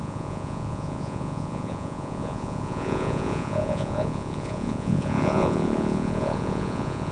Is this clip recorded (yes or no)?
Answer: no